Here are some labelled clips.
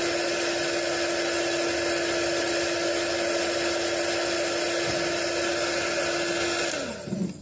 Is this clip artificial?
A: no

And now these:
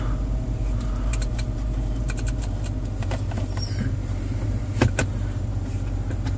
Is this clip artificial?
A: yes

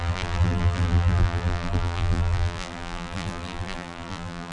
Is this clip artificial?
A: yes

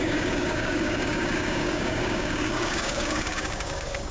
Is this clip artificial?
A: yes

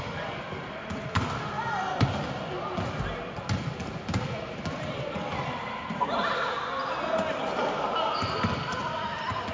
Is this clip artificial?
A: no